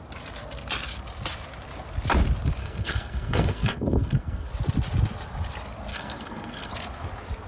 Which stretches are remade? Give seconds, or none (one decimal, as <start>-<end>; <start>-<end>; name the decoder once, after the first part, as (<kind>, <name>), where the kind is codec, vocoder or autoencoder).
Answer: 2.6-4.5 (codec, SNAC); 5.9-6.7